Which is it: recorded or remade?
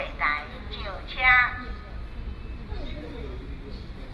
recorded